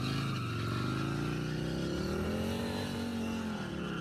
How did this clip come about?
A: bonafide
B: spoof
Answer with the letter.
A